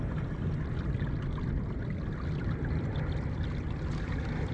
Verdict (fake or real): real